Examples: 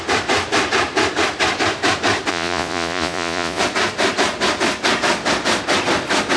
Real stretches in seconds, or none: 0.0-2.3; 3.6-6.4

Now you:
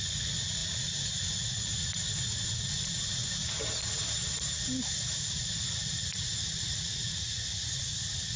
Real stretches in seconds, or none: 3.4-5.2

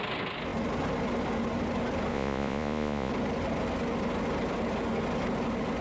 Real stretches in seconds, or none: 0.0-2.1; 3.1-5.8